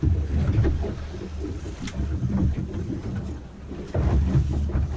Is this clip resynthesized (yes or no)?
no